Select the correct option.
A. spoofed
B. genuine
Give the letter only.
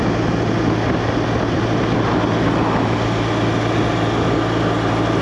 B